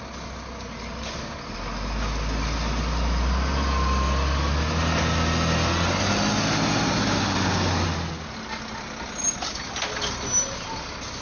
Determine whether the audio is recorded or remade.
recorded